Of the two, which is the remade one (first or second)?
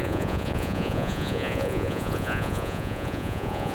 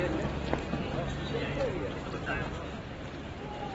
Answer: first